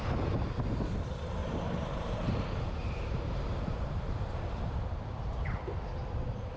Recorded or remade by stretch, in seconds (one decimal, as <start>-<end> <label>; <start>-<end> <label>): 0.0-1.4 recorded; 1.4-5.4 remade; 5.4-6.6 recorded